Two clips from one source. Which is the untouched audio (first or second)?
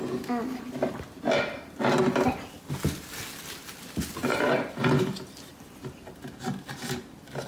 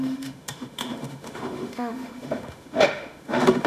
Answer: first